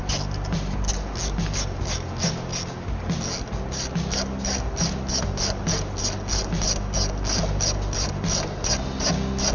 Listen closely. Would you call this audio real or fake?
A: real